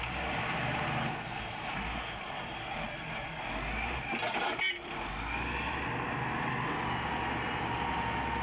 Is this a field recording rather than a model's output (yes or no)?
yes